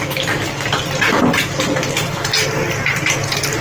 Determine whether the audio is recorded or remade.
recorded